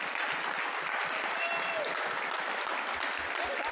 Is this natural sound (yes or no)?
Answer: yes